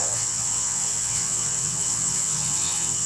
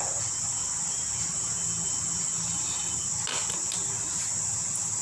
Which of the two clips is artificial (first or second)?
first